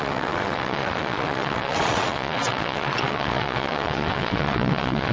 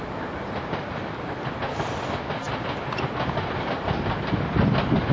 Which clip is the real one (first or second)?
second